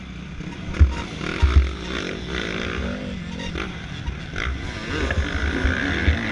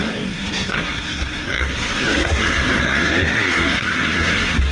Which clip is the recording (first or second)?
first